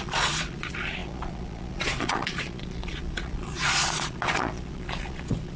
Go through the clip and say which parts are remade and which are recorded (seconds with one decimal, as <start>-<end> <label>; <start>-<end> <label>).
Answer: 0.0-5.6 remade